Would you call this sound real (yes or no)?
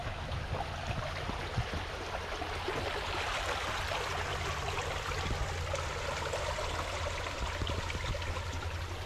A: yes